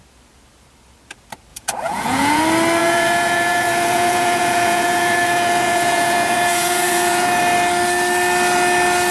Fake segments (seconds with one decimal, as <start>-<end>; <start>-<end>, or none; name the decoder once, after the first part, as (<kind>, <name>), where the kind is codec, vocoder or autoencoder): 1.5-2.4 (vocoder, Vocos); 2.8-7.4